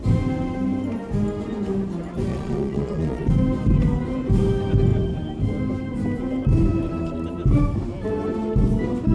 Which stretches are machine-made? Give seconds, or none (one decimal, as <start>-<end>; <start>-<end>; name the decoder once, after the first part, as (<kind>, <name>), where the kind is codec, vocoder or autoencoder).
2.3-3.3 (vocoder, Vocos)